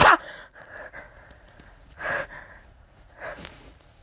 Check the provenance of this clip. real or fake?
fake